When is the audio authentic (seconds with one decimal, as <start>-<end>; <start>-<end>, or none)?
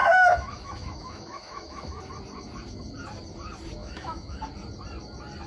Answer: 2.1-3.8; 4.4-5.5